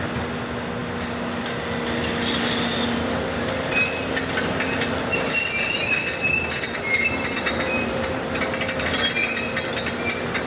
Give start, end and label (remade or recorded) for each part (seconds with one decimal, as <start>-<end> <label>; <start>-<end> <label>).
0.0-10.5 recorded